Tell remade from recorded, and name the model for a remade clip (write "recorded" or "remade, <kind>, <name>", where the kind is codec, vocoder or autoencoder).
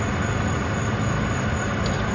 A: recorded